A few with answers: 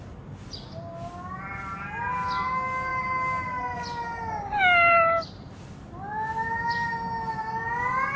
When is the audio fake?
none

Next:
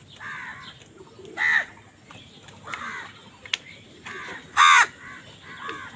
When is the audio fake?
none

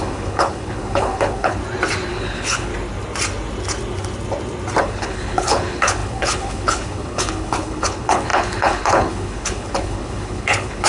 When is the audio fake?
0.0-1.6; 2.1-2.7; 4.8-10.9

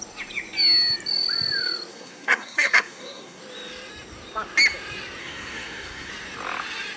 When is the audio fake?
1.9-3.4; 5.2-6.1